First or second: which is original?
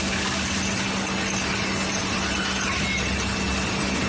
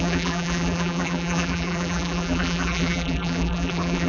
first